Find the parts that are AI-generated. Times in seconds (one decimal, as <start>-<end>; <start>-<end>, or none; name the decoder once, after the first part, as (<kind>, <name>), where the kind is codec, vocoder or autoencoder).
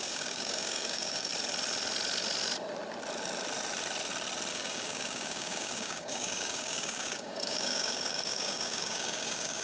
0.0-1.3 (codec, DAC); 4.5-9.6